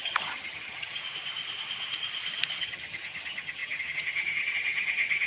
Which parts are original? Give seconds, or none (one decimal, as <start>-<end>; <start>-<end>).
1.0-2.6